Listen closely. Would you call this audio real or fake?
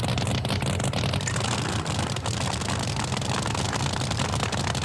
real